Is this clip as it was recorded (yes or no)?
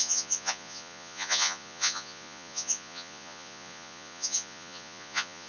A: no